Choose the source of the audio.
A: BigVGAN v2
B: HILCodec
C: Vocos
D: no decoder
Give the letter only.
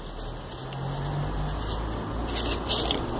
D